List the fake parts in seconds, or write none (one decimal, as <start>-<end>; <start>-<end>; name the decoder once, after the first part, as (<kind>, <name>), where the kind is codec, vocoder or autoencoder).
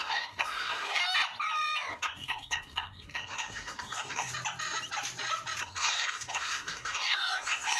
0.0-1.0 (codec, SNAC); 1.9-4.3; 5.6-7.8